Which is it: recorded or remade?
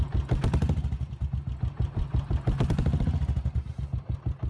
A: recorded